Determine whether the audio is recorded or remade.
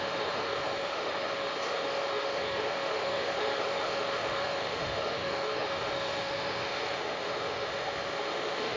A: remade